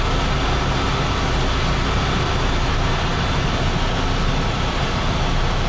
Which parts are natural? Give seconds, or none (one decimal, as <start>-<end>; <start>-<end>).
0.0-5.7